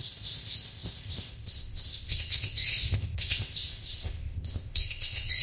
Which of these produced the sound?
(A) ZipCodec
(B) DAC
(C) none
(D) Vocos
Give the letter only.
A